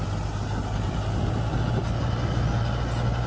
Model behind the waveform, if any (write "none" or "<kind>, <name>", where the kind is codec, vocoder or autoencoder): none